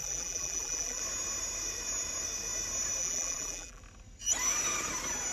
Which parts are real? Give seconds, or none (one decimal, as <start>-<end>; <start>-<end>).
1.0-3.0; 3.8-5.3